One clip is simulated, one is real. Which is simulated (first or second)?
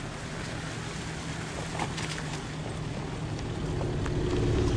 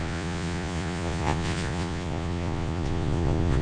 second